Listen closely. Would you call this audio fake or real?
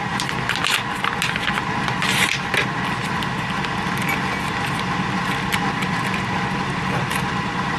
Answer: real